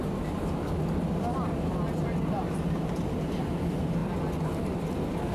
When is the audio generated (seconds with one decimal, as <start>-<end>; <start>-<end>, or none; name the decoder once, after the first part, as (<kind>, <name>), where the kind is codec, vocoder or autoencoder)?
2.2-4.0 (vocoder, BigVGAN v2)